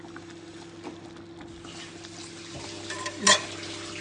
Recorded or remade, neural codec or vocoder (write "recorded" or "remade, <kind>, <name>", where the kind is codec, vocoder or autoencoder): recorded